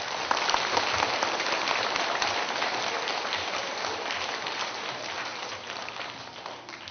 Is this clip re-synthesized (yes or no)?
no